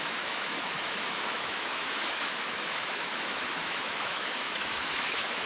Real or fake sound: fake